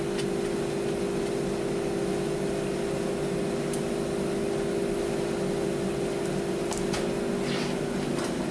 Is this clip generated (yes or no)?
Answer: no